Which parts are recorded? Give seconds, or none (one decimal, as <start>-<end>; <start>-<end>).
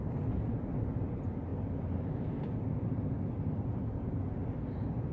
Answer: 0.0-5.1